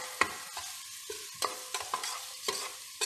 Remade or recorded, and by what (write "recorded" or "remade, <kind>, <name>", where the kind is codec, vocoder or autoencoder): recorded